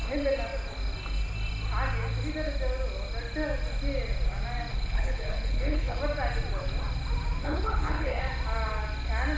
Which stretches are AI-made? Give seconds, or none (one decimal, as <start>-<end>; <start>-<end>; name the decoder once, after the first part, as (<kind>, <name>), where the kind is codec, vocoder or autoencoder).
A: 4.7-6.0 (codec, HILCodec); 7.4-8.2